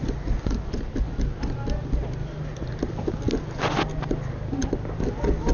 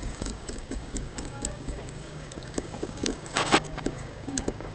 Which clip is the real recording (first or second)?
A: first